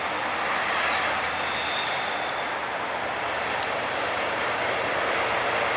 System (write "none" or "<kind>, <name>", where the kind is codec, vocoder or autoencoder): none